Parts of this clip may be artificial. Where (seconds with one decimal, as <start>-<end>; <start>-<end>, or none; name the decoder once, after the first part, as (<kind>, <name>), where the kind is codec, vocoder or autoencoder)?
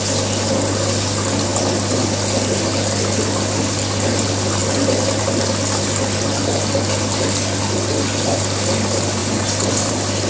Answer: none